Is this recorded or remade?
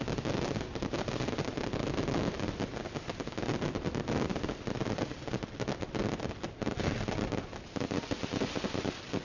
recorded